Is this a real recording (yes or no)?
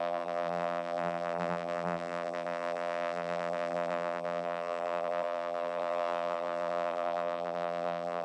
no